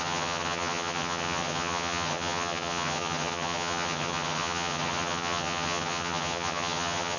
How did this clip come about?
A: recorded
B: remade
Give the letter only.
B